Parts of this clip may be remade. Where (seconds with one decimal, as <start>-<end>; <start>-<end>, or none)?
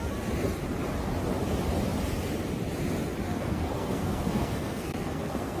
3.3-5.6